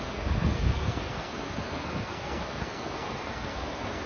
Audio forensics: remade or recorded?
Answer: remade